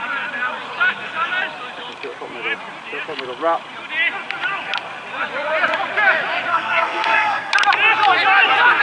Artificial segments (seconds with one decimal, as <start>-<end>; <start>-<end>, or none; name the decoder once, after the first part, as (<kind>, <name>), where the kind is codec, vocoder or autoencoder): 6.5-7.5 (codec, SNAC)